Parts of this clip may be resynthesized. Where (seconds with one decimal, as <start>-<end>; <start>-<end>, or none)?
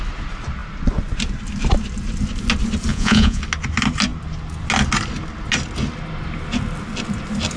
2.9-3.4